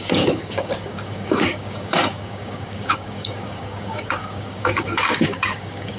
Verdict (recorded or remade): remade